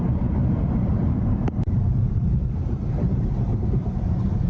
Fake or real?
fake